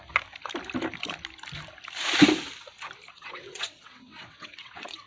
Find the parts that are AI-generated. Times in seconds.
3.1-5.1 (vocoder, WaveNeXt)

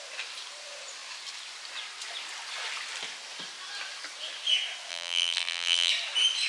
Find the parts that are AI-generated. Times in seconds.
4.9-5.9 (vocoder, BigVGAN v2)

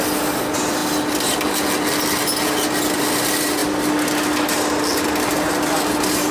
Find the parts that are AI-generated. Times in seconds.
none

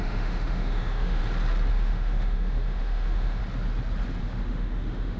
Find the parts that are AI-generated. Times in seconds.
0.0-1.2 (autoencoder, DAC-VAE); 1.7-3.4; 4.2-5.2